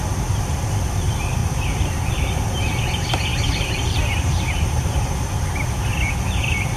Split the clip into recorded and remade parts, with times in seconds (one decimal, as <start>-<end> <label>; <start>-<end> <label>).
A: 0.0-3.3 recorded; 3.3-5.3 remade; 5.3-6.8 recorded